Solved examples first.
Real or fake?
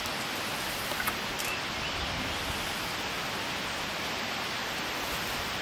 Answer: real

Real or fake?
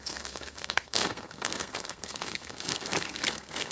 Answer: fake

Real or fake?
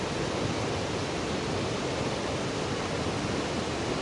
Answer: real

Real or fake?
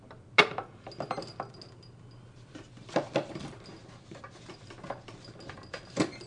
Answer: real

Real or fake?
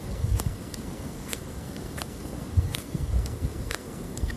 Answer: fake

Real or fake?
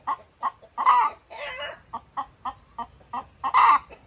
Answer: real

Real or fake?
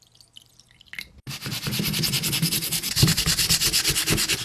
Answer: real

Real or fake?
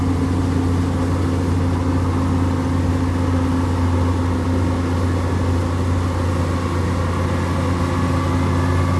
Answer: real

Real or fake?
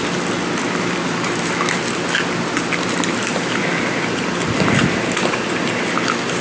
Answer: real